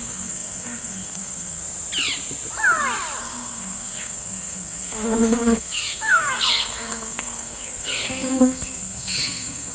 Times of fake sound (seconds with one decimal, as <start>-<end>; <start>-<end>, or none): 0.0-1.6; 3.2-9.7